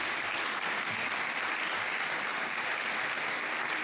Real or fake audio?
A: real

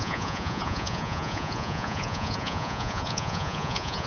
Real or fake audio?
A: fake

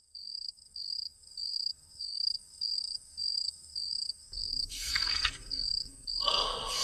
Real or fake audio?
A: fake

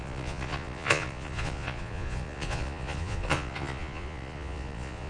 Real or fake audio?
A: fake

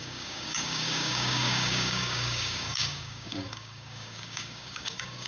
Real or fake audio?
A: fake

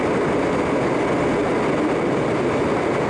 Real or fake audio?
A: real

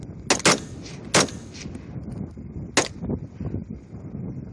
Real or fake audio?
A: real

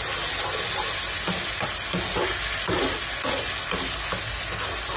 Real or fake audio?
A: real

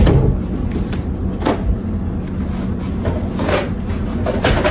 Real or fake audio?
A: real